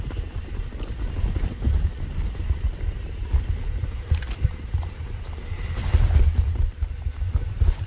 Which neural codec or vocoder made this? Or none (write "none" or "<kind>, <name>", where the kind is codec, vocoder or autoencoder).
none